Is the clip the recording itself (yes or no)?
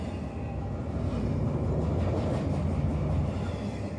yes